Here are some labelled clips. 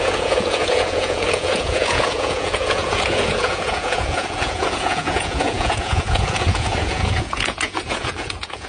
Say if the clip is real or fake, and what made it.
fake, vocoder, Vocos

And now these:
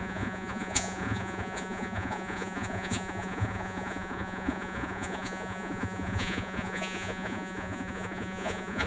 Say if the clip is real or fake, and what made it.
fake, vocoder, Vocos